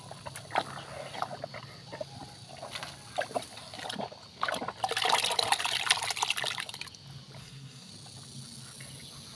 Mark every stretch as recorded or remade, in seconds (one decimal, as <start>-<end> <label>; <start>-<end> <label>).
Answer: 0.0-7.4 recorded; 7.4-7.9 remade; 7.9-9.4 recorded